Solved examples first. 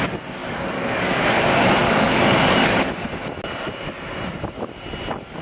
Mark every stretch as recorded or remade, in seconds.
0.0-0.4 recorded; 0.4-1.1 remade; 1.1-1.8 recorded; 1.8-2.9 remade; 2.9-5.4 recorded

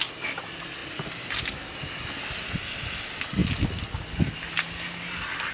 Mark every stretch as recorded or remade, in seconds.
0.0-5.5 recorded